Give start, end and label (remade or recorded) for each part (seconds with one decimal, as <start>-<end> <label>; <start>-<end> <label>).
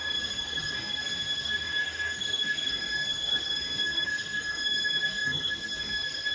0.0-6.3 remade